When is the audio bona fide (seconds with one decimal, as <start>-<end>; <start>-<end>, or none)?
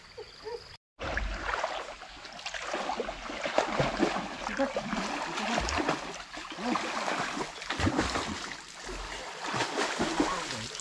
0.0-10.8